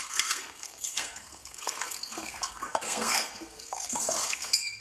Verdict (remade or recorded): remade